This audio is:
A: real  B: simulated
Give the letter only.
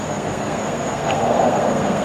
B